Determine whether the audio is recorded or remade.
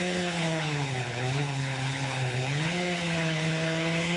remade